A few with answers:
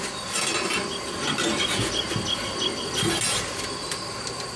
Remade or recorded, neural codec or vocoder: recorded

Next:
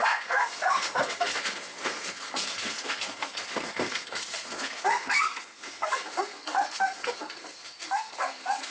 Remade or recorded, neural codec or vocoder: remade, codec, SNAC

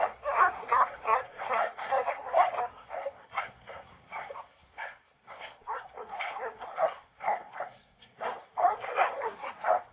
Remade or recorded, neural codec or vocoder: remade, codec, SNAC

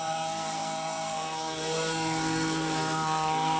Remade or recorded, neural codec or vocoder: remade, codec, SNAC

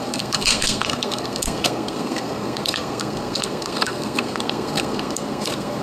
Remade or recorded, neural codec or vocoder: remade, codec, SNAC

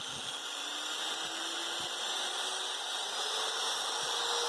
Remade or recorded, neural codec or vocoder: recorded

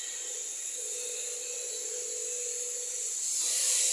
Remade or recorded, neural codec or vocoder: recorded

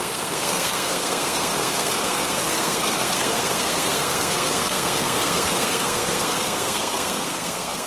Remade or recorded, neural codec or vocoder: remade, codec, SNAC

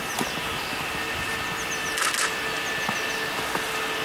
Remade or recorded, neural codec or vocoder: recorded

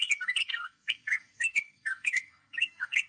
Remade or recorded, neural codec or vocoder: remade, codec, SNAC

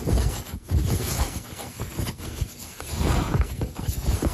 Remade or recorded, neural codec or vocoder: remade, codec, SNAC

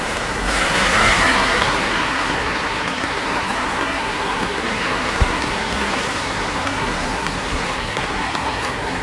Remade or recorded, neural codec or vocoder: remade, codec, SNAC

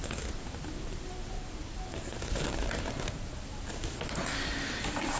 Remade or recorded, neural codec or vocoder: recorded